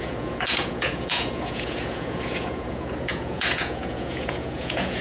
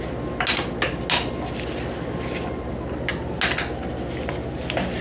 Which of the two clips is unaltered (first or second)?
second